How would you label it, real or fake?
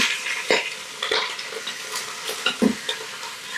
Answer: fake